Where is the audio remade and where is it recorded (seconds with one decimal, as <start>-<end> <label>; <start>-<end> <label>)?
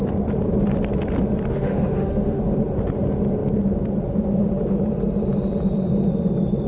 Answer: 0.0-1.5 recorded; 1.5-2.4 remade; 2.4-6.7 recorded